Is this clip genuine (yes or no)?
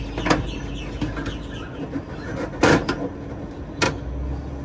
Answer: yes